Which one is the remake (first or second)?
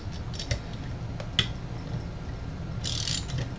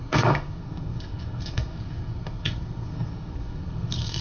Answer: second